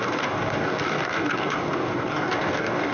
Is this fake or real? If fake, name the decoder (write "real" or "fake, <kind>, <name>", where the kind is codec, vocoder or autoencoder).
fake, codec, DAC